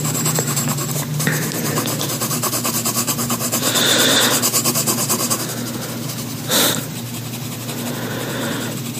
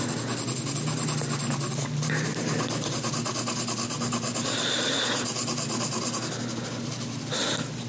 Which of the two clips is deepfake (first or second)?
first